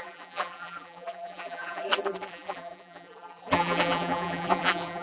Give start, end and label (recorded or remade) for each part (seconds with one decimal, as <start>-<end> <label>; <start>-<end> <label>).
0.0-5.0 remade